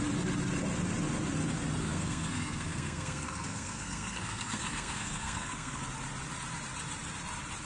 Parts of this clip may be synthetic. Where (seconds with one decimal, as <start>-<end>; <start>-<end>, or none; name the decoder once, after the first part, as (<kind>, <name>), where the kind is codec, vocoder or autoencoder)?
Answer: 1.8-5.8 (codec, SNAC)